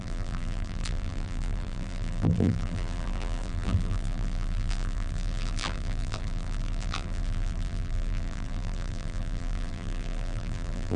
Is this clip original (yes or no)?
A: no